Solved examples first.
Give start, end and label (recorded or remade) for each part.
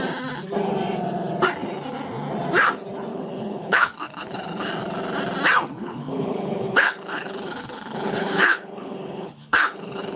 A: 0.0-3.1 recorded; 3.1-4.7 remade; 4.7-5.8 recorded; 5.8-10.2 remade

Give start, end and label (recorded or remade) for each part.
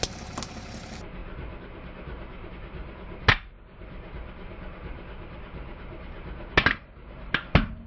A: 0.0-7.9 recorded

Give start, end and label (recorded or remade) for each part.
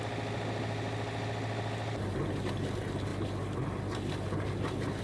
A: 0.0-5.0 recorded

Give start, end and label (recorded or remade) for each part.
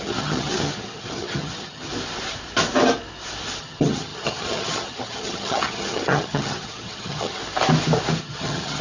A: 0.0-1.9 remade; 1.9-3.6 recorded; 3.6-7.4 remade; 7.4-8.2 recorded; 8.2-8.8 remade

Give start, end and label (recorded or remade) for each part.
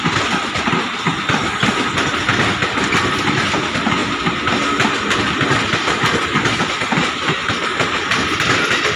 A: 0.0-9.0 recorded